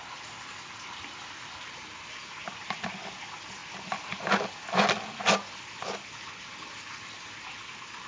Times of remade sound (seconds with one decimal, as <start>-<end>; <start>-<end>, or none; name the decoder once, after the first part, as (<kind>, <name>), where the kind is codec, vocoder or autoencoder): none